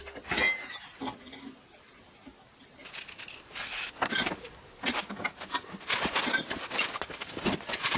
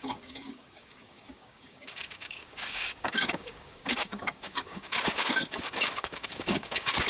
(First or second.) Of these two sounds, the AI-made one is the second